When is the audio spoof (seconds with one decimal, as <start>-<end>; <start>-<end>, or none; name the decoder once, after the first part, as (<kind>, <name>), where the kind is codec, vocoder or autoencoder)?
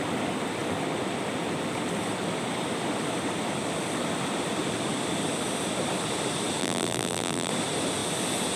6.6-7.5 (vocoder, BigVGAN v2)